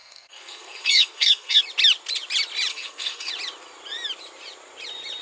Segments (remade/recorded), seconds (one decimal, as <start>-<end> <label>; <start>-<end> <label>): 0.0-1.6 remade; 1.6-2.7 recorded; 2.7-3.3 remade; 3.3-5.2 recorded